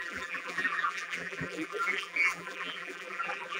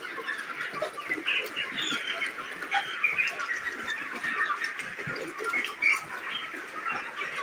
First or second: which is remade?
first